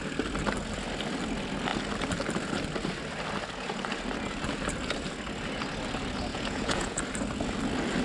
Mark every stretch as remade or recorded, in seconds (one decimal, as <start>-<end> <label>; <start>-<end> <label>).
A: 0.0-6.3 recorded; 6.3-7.0 remade; 7.0-8.0 recorded